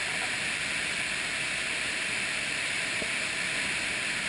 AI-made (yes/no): no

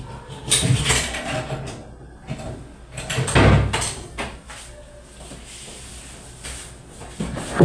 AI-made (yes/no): no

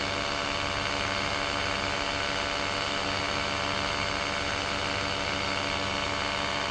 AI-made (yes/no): no